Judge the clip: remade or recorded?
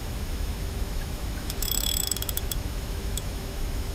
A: remade